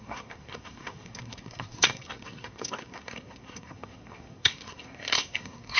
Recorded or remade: remade